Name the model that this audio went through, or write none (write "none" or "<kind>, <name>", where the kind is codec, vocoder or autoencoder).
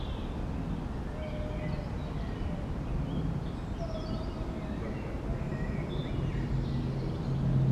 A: none